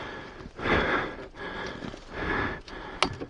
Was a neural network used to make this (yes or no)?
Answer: no